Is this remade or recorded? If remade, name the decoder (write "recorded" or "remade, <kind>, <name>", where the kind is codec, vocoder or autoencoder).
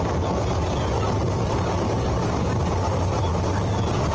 recorded